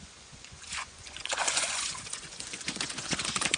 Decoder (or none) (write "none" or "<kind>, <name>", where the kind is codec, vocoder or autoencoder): vocoder, Vocos